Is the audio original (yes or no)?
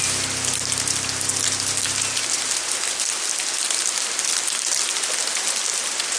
yes